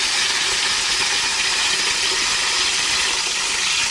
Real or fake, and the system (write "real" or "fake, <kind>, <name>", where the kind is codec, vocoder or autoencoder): real